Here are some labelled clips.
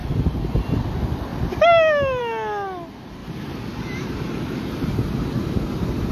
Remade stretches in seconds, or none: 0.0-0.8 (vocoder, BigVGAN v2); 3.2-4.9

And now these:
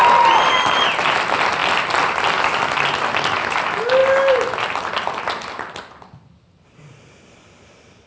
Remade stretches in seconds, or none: none